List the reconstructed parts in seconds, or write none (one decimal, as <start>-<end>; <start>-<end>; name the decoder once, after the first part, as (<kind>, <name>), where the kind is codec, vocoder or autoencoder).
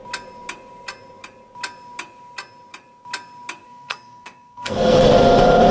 3.6-5.1 (codec, SNAC)